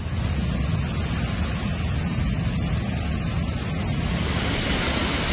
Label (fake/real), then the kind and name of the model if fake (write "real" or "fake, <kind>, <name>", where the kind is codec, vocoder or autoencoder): real